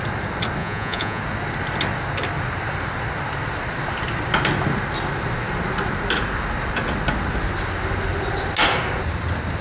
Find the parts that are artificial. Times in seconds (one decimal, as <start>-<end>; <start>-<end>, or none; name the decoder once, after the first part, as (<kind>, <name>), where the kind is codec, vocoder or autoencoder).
0.6-1.2 (vocoder, Vocos)